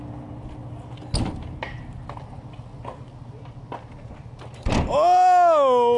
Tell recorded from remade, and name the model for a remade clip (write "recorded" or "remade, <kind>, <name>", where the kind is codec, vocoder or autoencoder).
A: recorded